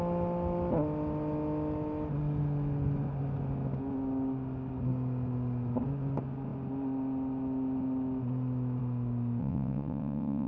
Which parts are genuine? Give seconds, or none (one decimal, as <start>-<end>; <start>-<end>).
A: 0.0-9.4